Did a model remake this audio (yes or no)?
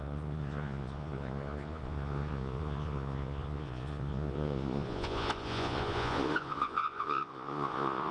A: yes